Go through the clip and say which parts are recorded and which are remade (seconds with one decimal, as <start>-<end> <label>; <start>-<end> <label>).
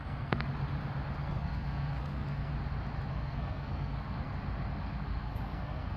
0.0-0.5 remade; 0.5-1.2 recorded; 1.2-2.5 remade; 2.5-3.1 recorded; 3.1-4.3 remade; 4.3-4.8 recorded; 4.8-6.0 remade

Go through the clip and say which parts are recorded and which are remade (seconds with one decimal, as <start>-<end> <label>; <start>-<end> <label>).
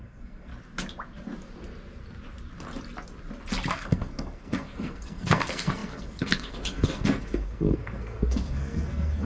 0.0-0.5 remade; 0.5-3.7 recorded; 3.7-9.2 remade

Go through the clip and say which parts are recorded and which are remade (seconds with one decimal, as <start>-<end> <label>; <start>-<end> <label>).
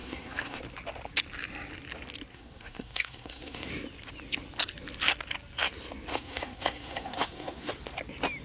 0.0-0.6 remade; 0.6-2.3 recorded; 2.3-3.7 remade; 3.7-6.1 recorded; 6.1-7.7 remade; 7.7-8.4 recorded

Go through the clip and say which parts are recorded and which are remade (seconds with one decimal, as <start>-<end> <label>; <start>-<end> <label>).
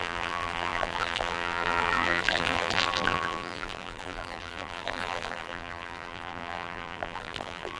0.0-7.8 remade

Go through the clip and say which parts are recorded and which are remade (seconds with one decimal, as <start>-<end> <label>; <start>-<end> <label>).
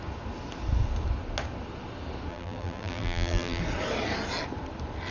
0.0-2.3 recorded; 2.3-3.6 remade; 3.6-5.1 recorded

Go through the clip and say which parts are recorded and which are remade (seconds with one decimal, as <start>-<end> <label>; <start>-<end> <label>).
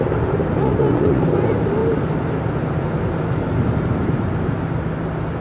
0.0-0.6 recorded; 0.6-1.2 remade; 1.2-5.4 recorded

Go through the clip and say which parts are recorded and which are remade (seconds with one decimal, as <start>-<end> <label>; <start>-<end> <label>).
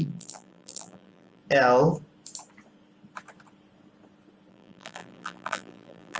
0.0-1.4 remade; 1.4-4.5 recorded; 4.5-6.2 remade